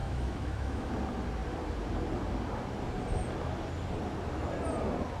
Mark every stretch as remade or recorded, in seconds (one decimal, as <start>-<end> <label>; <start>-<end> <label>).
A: 0.0-0.9 remade; 0.9-5.2 recorded